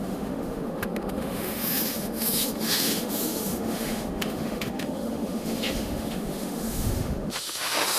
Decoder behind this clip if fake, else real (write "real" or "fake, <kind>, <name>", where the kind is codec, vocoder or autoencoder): fake, autoencoder, DAC-VAE